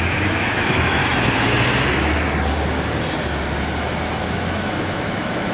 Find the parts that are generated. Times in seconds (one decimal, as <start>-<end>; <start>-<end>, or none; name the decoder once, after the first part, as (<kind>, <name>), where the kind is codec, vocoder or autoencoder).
0.0-1.0 (autoencoder, DAC-VAE); 4.3-5.5